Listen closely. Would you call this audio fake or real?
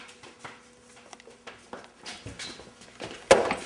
real